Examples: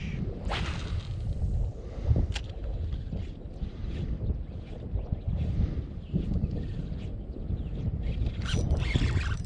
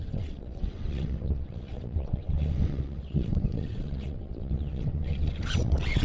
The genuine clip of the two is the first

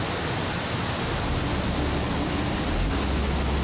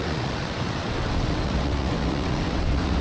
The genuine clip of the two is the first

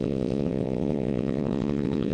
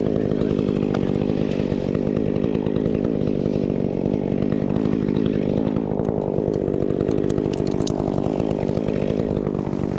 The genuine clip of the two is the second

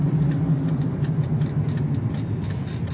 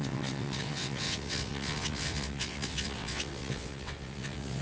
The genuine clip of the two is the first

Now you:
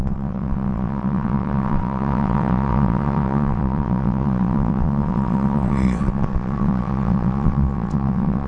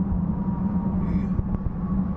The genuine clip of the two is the second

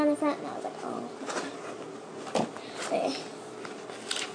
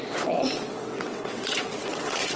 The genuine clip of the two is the first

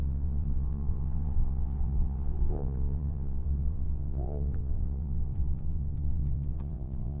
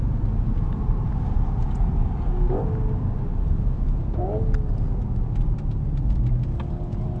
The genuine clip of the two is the second